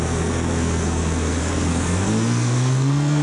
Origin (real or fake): fake